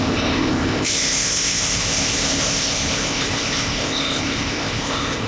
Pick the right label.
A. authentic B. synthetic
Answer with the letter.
B